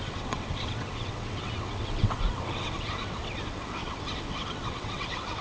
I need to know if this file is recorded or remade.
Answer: remade